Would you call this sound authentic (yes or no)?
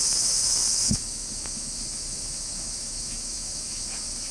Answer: no